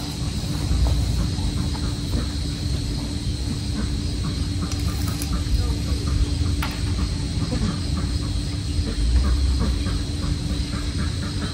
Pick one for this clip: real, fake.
real